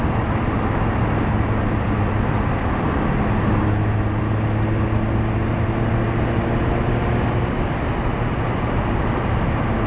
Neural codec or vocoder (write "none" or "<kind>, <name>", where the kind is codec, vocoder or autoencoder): none